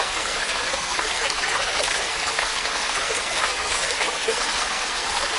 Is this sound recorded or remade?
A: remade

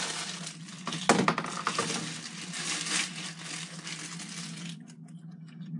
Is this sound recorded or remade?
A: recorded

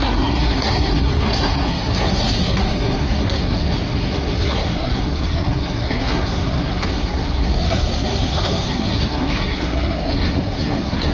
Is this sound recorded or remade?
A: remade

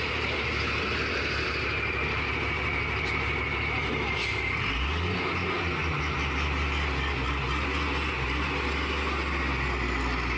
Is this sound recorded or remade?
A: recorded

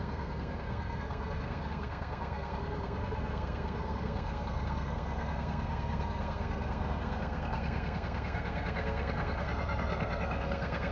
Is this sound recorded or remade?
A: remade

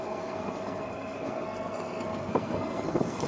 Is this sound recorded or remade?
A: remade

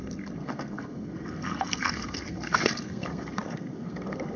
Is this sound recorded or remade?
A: remade